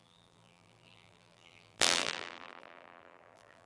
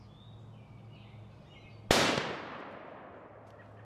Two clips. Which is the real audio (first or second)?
second